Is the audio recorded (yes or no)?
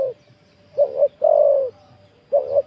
yes